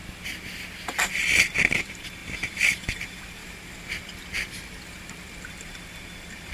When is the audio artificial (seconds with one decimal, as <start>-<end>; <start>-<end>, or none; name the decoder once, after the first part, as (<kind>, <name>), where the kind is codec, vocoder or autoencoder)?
1.1-3.4 (vocoder, BigVGAN v2); 5.5-6.5